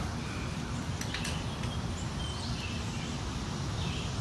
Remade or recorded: remade